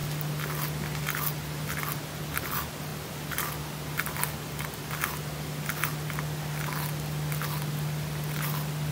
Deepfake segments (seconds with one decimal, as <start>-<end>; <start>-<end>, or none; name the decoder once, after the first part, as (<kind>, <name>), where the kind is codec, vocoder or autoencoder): none